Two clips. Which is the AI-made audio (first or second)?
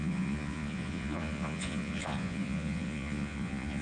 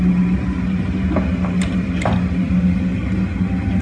first